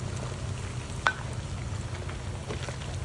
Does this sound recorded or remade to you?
recorded